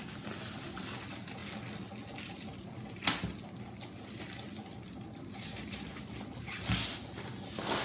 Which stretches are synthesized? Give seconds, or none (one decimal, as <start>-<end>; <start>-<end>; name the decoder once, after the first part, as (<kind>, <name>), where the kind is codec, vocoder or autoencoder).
none